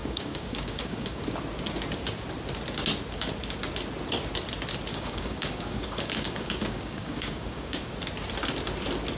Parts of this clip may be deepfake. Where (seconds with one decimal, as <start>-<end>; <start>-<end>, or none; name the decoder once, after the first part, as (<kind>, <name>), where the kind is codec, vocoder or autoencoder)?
0.0-1.2 (codec, DAC); 4.9-7.9